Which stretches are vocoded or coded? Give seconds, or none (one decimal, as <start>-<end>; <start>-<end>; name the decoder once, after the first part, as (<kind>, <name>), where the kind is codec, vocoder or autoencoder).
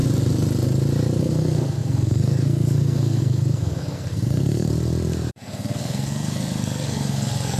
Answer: 1.2-4.7 (codec, SNAC); 5.3-7.6